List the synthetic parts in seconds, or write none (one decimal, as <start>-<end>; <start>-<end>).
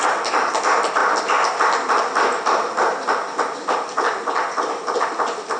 none